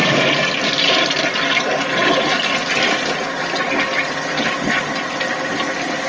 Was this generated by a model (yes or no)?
no